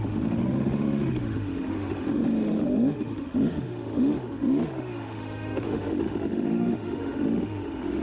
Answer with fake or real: fake